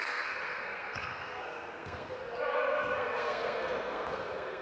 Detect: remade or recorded remade